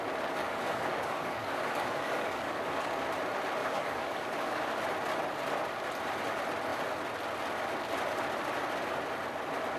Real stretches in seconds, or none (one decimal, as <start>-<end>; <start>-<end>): 0.0-0.4; 3.0-3.6; 4.8-9.8